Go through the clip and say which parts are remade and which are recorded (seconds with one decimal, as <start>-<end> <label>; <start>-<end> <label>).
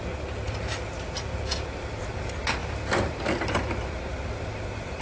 0.0-1.5 recorded; 1.5-2.1 remade; 2.1-2.6 recorded; 2.6-5.0 remade